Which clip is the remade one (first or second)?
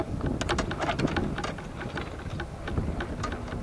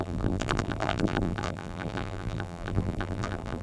second